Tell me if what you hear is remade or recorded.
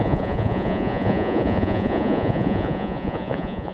remade